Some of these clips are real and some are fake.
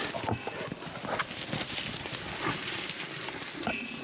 real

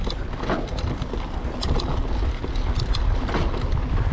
real